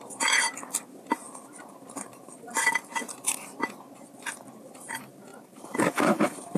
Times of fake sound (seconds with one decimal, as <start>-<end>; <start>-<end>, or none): 1.2-3.6; 5.3-6.6